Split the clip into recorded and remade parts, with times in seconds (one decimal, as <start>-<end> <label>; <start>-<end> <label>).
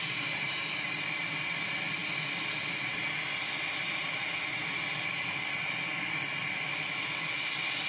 0.0-7.9 recorded